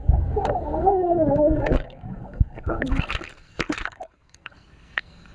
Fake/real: fake